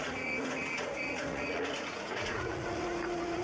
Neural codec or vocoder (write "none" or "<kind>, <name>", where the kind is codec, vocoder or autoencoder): vocoder, Vocos